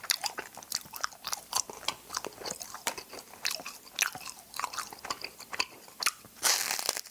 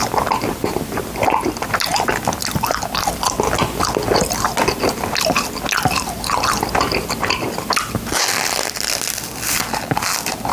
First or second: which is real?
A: second